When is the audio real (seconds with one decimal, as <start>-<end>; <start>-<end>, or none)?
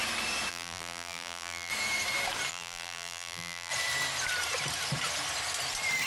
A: 0.0-0.5; 1.7-2.5; 3.7-6.1